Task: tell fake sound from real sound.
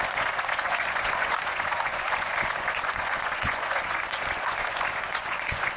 fake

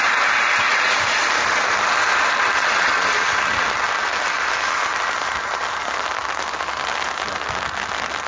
real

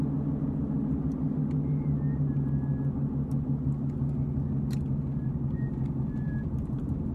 real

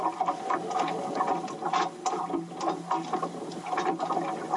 real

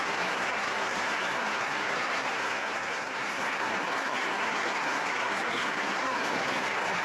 fake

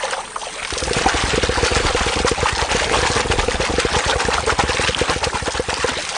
real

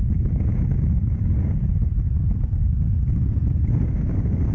real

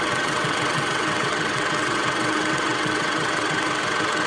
fake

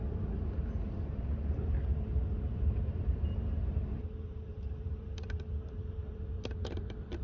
fake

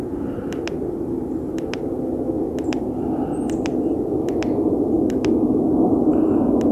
real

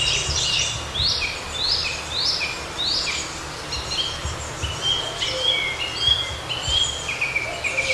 real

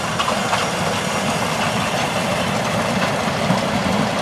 real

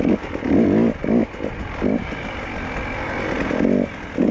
real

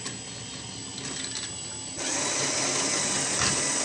real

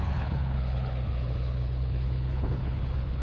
fake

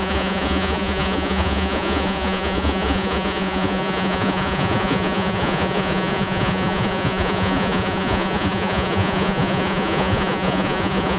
fake